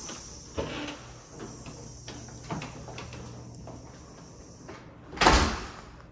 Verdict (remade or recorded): recorded